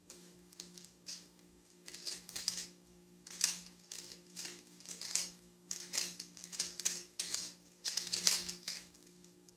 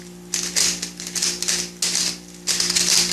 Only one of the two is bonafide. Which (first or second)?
second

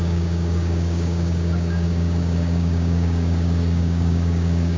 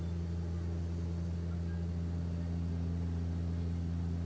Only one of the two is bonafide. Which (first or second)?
second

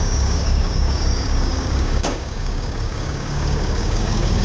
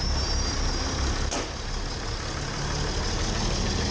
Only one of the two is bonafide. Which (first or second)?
second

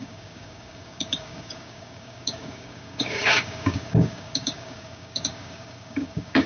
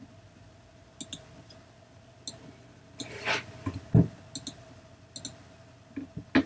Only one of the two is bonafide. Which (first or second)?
second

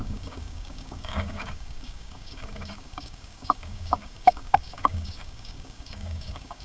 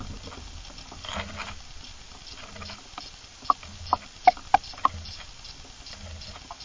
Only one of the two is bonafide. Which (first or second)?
second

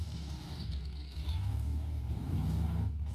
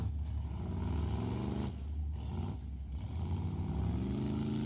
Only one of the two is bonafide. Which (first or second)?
second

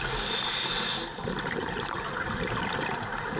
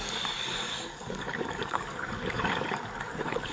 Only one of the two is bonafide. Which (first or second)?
first